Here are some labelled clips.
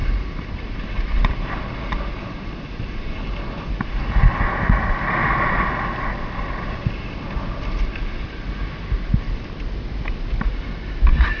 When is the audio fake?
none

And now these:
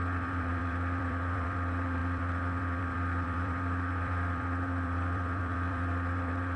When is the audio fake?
0.0-6.6 (vocoder, BigVGAN v2)

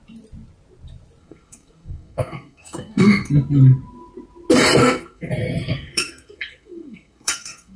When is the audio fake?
1.2-3.3 (codec, SNAC); 4.8-5.3; 5.7-7.8

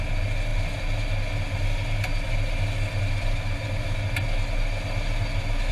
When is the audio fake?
none

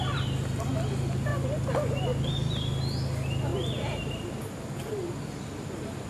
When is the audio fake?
none

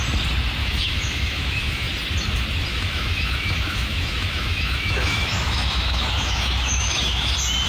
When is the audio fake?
0.6-1.9 (autoencoder, DAC-VAE); 2.7-7.3

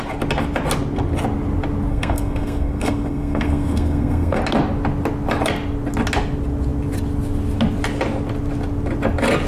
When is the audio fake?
1.9-4.4 (codec, SNAC)